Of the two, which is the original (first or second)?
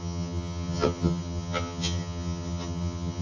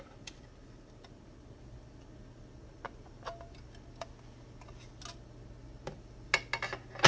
second